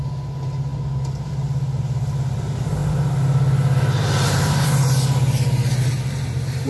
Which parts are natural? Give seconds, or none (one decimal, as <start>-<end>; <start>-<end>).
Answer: 0.0-6.7